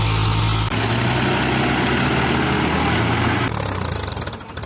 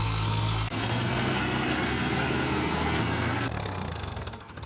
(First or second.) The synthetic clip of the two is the second